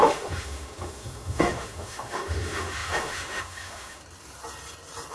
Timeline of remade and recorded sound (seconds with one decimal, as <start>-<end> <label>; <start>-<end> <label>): 0.0-4.0 remade; 4.0-5.1 recorded